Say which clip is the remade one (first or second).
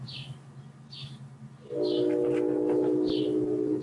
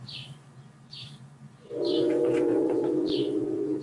second